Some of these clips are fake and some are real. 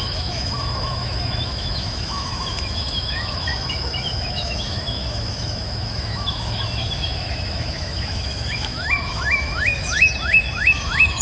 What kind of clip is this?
fake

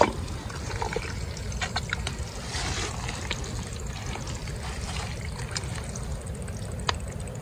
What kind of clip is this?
real